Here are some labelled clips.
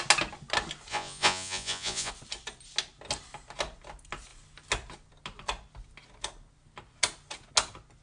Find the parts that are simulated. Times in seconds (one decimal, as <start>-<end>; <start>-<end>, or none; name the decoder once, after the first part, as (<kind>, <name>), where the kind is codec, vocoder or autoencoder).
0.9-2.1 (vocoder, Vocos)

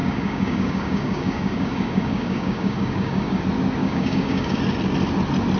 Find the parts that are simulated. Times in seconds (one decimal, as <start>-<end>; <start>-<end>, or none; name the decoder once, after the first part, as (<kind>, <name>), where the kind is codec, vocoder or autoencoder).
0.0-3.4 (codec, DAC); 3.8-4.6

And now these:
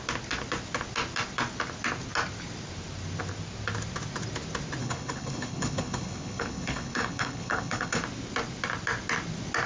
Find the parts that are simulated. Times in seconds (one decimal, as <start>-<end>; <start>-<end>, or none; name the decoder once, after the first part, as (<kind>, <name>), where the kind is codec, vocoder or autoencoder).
4.8-8.0 (codec, HILCodec)

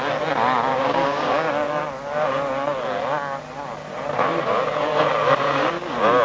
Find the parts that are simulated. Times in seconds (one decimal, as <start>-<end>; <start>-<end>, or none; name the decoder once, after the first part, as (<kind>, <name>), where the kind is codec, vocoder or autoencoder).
0.7-1.5 (codec, DAC)